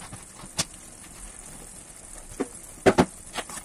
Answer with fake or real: real